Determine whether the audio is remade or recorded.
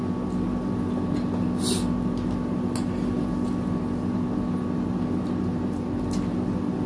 recorded